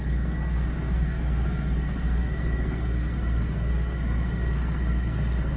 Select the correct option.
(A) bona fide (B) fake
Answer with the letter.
B